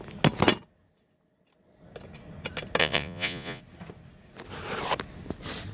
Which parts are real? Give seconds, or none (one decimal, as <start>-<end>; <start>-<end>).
0.0-2.8; 3.6-5.7